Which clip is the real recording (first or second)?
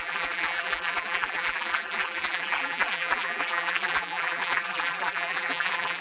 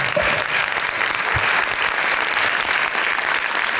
second